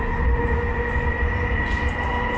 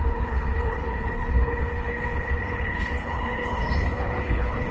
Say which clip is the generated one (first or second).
second